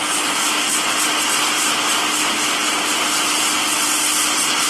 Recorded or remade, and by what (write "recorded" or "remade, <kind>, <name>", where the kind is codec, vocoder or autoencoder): recorded